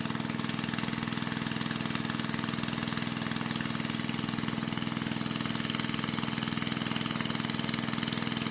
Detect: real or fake real